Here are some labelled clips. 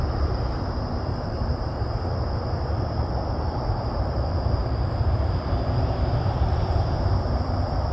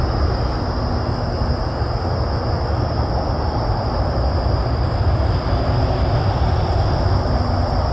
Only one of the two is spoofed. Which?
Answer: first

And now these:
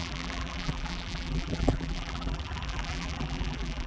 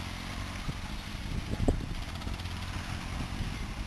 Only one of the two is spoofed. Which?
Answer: first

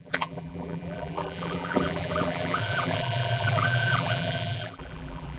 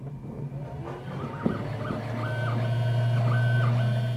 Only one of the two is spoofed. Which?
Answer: first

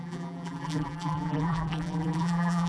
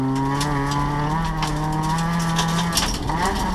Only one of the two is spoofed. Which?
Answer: first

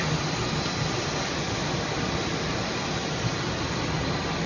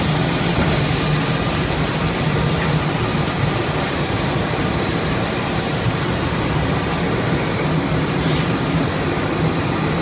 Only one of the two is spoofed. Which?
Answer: second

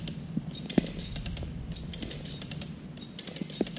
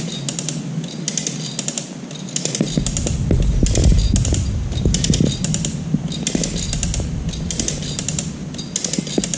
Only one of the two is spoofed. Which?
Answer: first